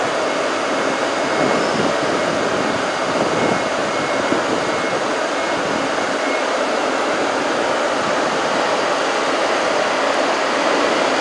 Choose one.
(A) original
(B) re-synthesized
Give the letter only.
A